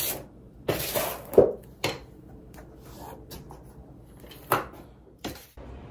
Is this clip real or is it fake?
real